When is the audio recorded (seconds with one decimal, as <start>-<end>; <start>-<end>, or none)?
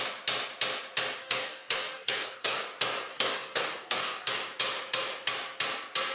0.0-1.2; 2.6-3.1; 4.3-6.1